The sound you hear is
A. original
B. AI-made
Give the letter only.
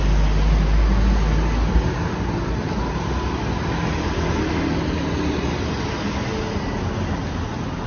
A